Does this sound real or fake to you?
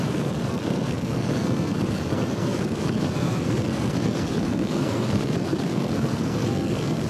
fake